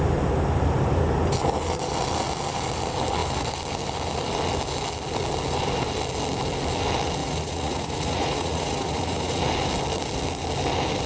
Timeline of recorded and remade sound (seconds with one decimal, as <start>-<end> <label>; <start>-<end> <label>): 0.0-7.2 recorded; 7.2-9.4 remade; 9.4-11.1 recorded